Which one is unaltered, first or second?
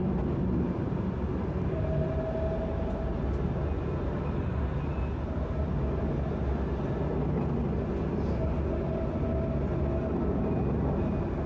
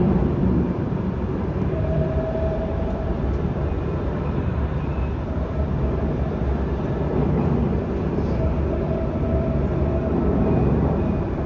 first